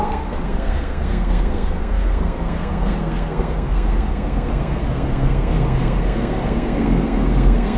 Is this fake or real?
fake